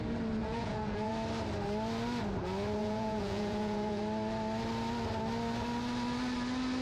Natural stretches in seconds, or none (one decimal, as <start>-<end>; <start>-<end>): 0.0-0.4; 1.1-2.8; 4.0-6.8